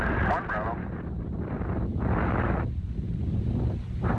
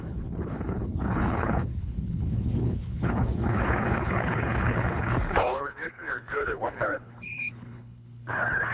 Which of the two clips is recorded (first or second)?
first